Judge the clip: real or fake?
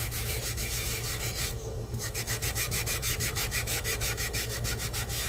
fake